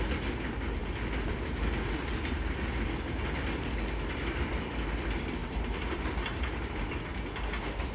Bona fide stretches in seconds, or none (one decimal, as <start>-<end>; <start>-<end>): 0.0-5.4; 6.9-7.9